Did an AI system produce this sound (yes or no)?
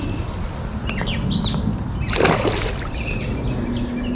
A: no